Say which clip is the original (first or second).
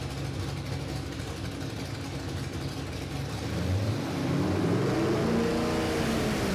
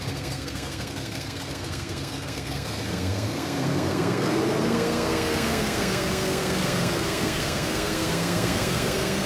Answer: first